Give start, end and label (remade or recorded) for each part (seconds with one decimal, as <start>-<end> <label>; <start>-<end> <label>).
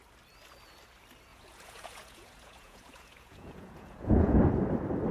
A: 0.0-1.3 recorded; 1.3-4.4 remade; 4.4-5.1 recorded